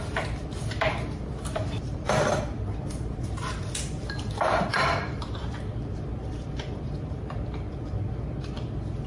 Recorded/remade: remade